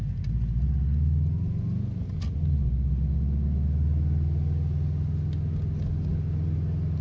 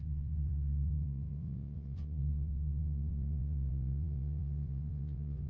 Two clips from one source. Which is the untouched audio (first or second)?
first